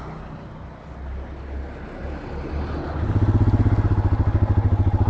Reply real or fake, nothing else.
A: real